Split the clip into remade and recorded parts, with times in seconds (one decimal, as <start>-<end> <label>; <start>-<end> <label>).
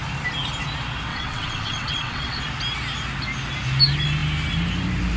0.0-1.1 recorded; 1.1-2.4 remade; 2.4-5.2 recorded